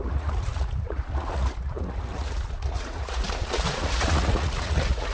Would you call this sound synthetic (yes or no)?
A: yes